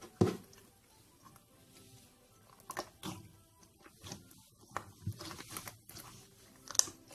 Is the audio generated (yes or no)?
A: no